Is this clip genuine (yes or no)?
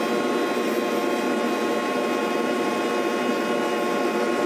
yes